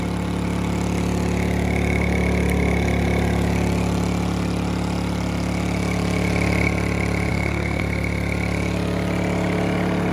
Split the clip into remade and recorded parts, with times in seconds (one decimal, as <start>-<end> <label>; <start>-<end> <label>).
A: 0.0-7.3 recorded; 7.3-7.8 remade; 7.8-10.1 recorded